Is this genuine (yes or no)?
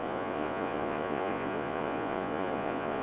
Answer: no